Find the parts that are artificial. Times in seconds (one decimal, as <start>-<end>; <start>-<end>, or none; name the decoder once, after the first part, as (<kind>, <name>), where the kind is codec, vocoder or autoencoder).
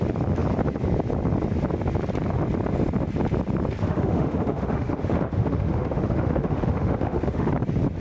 3.8-7.5 (autoencoder, DAC-VAE)